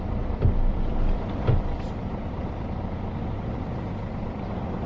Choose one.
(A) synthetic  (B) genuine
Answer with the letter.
A